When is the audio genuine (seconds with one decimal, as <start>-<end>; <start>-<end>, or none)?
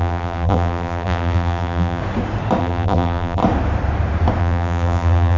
2.0-2.6; 3.4-4.4